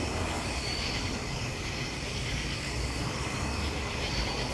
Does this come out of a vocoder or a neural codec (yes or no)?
yes